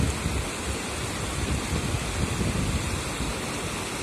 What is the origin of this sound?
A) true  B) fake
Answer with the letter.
A